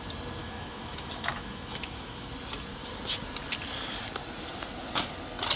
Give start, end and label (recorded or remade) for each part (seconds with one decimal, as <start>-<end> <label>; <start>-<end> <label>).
0.0-0.4 recorded; 0.4-2.3 remade; 2.3-5.6 recorded